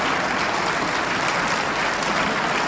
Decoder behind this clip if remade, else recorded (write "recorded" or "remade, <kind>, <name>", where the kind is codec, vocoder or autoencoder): recorded